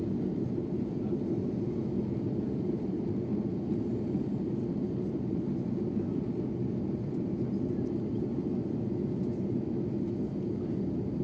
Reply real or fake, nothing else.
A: real